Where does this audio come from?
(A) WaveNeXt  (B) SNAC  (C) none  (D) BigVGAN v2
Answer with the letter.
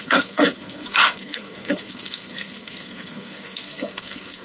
B